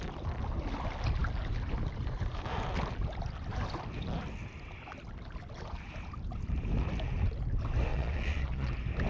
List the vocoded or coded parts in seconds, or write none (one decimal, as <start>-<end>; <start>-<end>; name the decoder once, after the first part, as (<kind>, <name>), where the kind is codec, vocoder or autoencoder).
7.9-8.7 (vocoder, Vocos)